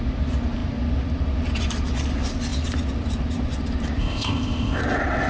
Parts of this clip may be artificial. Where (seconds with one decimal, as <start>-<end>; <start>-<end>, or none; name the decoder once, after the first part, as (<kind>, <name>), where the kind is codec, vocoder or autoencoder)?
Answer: 4.0-4.8 (codec, ZipCodec)